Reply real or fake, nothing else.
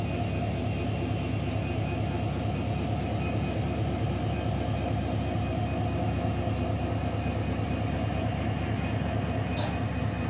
real